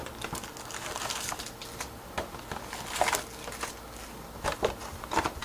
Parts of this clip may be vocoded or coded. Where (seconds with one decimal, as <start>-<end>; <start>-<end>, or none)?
none